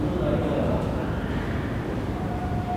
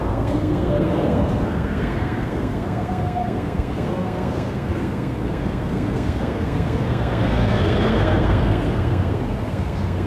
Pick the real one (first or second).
first